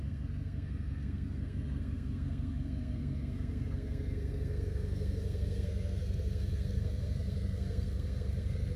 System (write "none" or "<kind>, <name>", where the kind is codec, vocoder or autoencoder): codec, SNAC